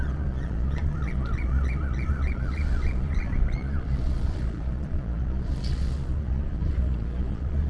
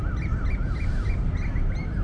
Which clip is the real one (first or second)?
second